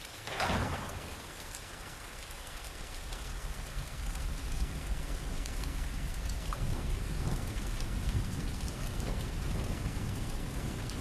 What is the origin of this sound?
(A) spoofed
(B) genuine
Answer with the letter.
A